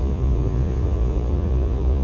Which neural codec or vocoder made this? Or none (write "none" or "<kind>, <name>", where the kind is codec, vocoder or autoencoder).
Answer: vocoder, Vocos